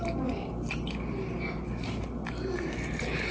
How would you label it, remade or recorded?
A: recorded